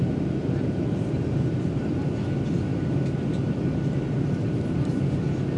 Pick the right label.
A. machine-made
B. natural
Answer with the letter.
B